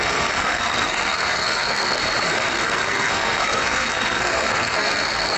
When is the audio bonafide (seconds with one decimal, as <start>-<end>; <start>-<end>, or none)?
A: 2.0-2.5